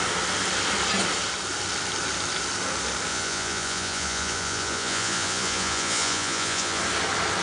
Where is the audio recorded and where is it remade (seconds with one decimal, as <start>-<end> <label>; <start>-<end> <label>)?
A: 0.0-3.1 recorded; 3.1-6.8 remade; 6.8-7.4 recorded